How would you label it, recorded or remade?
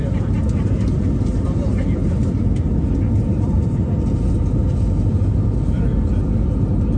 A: recorded